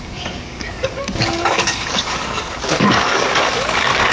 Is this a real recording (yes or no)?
no